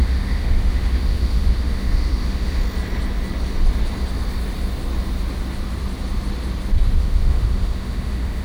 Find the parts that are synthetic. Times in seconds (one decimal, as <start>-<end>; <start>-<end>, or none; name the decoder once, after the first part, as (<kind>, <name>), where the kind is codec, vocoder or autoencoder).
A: 0.0-2.6 (autoencoder, DAC-VAE); 7.0-8.4